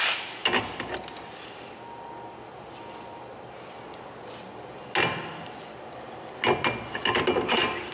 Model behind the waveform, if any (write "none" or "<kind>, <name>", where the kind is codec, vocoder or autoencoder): none